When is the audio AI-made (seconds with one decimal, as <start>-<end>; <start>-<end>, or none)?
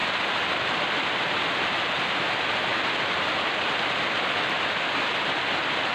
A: 1.1-2.7